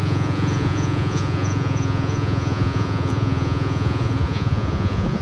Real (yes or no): no